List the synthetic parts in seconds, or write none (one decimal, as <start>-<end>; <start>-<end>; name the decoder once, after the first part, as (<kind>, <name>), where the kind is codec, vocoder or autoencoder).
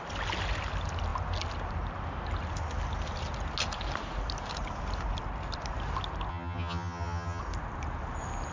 6.3-7.4 (vocoder, HiFi-GAN)